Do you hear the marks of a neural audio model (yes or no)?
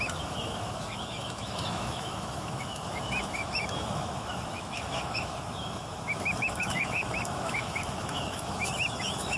yes